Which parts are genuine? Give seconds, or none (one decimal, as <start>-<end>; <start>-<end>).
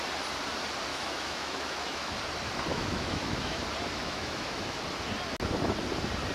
0.0-0.9; 2.1-2.7; 3.6-4.0; 4.8-6.3